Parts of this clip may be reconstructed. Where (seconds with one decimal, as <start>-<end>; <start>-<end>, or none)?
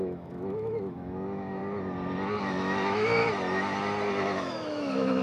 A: 0.0-1.6; 2.4-3.2; 4.1-5.2